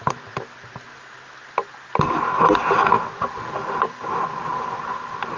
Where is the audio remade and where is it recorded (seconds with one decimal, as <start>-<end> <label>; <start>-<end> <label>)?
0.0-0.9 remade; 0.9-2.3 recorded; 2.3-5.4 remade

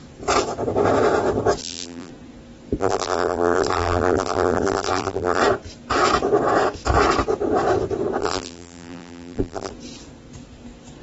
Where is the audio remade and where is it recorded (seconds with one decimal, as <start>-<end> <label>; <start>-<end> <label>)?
0.0-1.6 recorded; 1.6-2.1 remade; 2.1-2.8 recorded; 2.8-5.4 remade; 5.4-8.2 recorded; 8.2-9.7 remade; 9.7-11.0 recorded

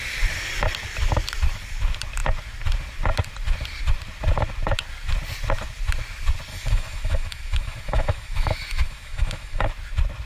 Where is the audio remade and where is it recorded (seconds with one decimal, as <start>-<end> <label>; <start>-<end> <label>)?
0.0-6.5 recorded; 6.5-9.7 remade; 9.7-10.3 recorded

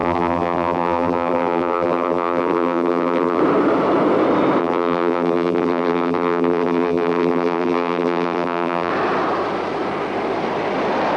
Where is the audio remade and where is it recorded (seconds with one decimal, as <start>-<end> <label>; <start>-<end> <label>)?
0.0-3.4 remade; 3.4-4.6 recorded; 4.6-8.9 remade; 8.9-11.2 recorded

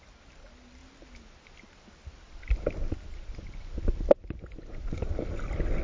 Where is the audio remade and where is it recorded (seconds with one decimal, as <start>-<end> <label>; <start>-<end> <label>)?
0.0-5.8 recorded

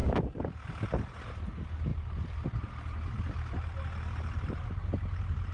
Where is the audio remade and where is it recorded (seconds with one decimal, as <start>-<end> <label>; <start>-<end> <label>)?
0.0-0.5 remade; 0.5-5.5 recorded

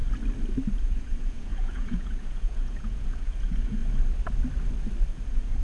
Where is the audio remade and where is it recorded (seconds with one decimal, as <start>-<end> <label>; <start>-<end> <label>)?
0.0-0.8 recorded; 0.8-3.8 remade; 3.8-5.1 recorded; 5.1-5.6 remade

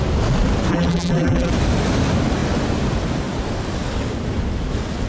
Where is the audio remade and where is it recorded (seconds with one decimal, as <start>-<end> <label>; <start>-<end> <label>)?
0.0-0.7 recorded; 0.7-1.5 remade; 1.5-5.1 recorded